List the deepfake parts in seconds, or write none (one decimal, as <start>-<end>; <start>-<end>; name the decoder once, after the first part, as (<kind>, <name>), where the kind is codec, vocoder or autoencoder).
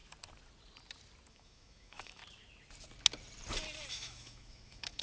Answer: 1.3-2.2 (autoencoder, DAC-VAE); 3.9-5.0